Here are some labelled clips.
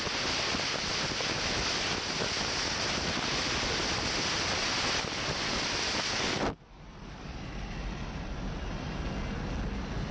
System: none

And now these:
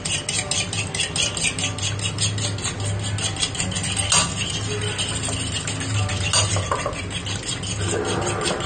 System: none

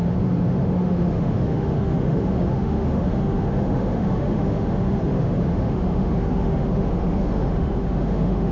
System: autoencoder, DAC-VAE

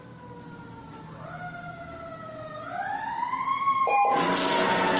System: none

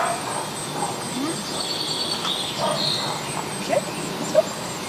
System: none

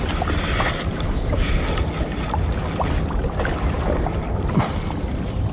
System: none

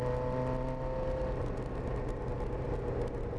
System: none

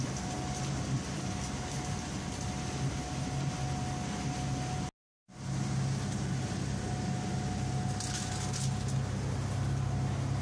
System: none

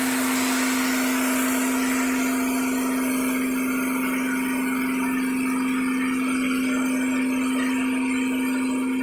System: none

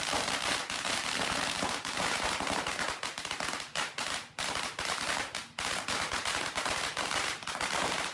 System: vocoder, BigVGAN v2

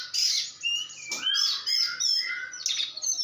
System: none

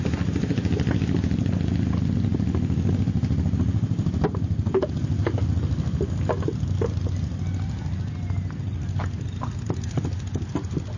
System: none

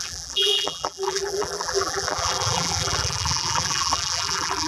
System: vocoder, BigVGAN v2